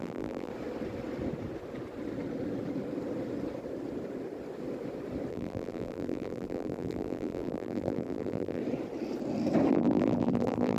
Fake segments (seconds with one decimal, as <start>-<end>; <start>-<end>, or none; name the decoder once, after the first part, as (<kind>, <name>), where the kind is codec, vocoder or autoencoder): 0.0-0.5 (vocoder, BigVGAN v2); 5.3-8.6; 9.7-10.8